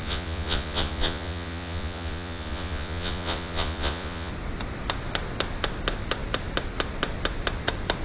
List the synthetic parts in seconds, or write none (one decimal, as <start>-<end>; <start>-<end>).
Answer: 0.0-4.3